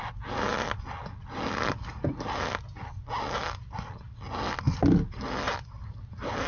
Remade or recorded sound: recorded